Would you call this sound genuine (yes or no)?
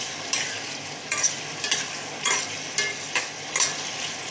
yes